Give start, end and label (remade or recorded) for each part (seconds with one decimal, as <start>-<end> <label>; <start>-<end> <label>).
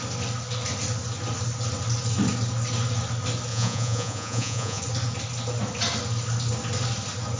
0.0-3.5 recorded; 3.5-4.8 remade; 4.8-7.4 recorded